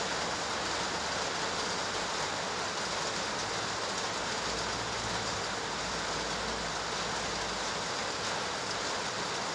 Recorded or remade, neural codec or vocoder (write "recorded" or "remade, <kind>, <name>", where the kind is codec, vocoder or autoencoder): recorded